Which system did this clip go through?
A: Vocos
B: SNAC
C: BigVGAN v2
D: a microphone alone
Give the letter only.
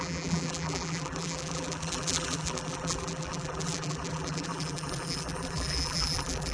C